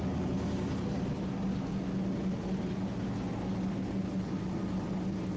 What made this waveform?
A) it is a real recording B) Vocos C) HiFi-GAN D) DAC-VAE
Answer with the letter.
A